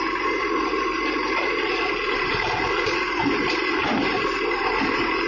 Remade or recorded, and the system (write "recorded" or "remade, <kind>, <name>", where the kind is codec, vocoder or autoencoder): remade, vocoder, BigVGAN v2